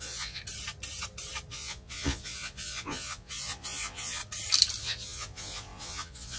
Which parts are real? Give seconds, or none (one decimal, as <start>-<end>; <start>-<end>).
0.4-1.5; 4.2-4.8